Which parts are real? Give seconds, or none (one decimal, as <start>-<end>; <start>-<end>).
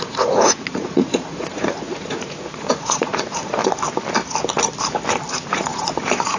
3.6-5.3